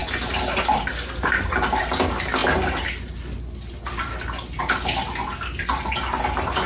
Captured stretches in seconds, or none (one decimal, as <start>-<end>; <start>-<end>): 0.0-6.7